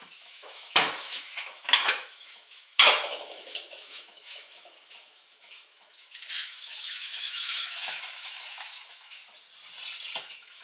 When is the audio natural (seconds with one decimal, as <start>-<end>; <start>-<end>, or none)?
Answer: 9.2-10.2